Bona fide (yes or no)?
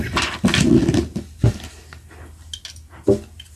yes